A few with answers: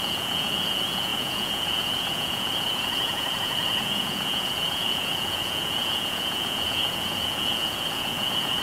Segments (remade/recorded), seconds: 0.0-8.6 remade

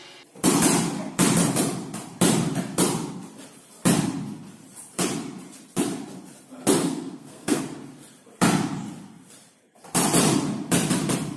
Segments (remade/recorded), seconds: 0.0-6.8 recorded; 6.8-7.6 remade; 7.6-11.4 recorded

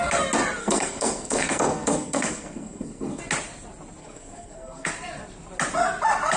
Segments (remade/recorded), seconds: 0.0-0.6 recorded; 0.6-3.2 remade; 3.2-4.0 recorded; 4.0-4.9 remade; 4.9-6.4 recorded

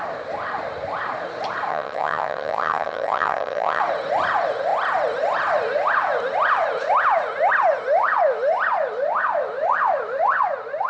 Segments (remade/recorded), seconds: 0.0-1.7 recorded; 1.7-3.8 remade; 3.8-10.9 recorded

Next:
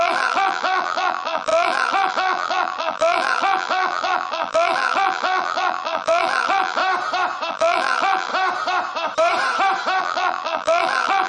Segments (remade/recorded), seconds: 0.0-6.8 remade; 6.8-7.5 recorded; 7.5-8.3 remade; 8.3-10.0 recorded; 10.0-11.3 remade

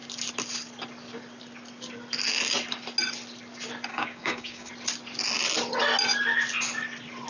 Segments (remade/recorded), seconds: 0.0-3.9 recorded; 3.9-4.7 remade; 4.7-7.3 recorded